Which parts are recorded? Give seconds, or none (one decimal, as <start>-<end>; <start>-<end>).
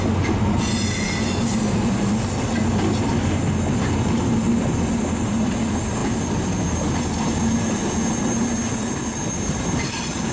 0.0-10.3